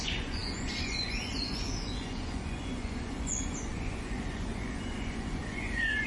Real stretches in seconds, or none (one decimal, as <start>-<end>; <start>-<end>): none